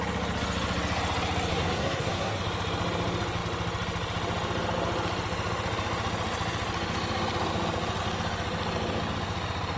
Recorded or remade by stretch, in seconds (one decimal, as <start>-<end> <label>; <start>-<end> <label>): 0.0-1.5 recorded; 1.5-2.4 remade; 2.4-9.8 recorded